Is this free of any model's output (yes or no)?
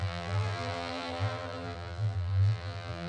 no